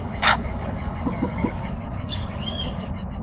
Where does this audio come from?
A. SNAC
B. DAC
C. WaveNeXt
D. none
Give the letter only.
B